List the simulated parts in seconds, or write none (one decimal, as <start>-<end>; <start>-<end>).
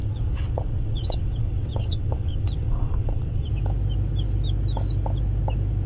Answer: 0.0-3.5